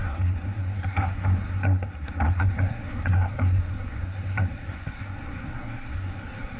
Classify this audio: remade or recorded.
remade